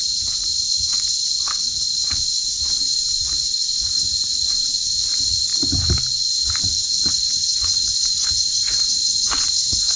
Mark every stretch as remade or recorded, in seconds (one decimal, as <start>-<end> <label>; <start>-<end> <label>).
0.0-5.5 remade; 5.5-7.1 recorded; 7.1-10.0 remade